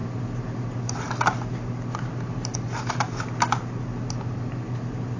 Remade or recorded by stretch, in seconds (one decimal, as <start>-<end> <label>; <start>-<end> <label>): 0.0-5.2 recorded